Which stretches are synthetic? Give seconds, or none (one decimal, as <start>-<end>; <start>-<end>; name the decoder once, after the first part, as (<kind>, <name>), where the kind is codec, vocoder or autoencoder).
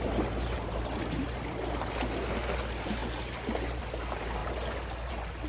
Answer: none